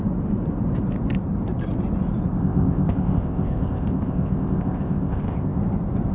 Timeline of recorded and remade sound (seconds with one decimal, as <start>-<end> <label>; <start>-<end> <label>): 0.0-2.4 recorded; 2.4-5.6 remade; 5.6-6.1 recorded